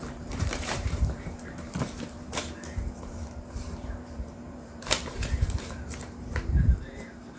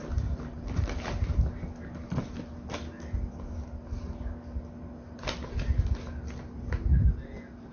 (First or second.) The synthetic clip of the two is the first